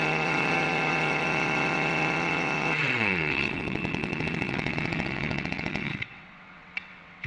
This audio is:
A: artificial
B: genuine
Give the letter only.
A